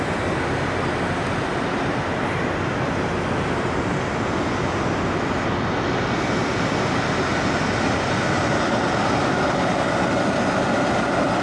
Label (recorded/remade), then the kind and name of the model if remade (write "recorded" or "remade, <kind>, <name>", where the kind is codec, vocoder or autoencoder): recorded